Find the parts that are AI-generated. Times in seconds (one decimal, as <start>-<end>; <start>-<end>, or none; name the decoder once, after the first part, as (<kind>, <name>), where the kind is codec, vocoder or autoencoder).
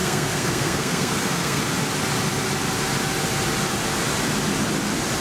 0.0-1.6 (codec, SNAC)